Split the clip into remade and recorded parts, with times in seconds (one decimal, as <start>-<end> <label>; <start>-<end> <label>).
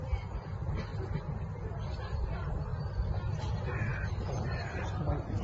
0.0-2.7 recorded; 2.7-3.5 remade; 3.5-3.9 recorded; 3.9-5.4 remade